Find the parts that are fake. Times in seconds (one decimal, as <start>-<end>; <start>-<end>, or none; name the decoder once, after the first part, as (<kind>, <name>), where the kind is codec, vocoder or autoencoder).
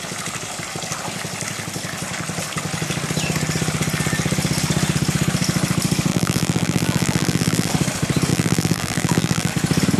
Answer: 6.1-7.7 (vocoder, BigVGAN v2); 8.3-9.5